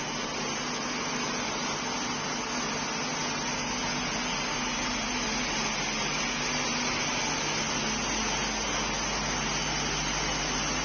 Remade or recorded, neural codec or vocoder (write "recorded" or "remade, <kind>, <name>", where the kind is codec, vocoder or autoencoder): recorded